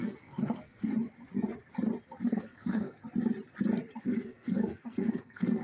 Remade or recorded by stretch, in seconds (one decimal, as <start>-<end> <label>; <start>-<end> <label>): 0.0-0.9 remade; 0.9-2.2 recorded; 2.2-3.0 remade; 3.0-4.0 recorded; 4.0-5.6 remade